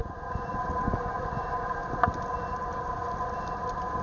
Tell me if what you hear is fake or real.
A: real